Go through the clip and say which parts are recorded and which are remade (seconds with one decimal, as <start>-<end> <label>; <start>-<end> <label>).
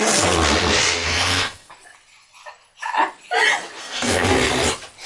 0.0-1.1 recorded; 1.1-1.7 remade; 1.7-3.8 recorded; 3.8-4.3 remade; 4.3-5.1 recorded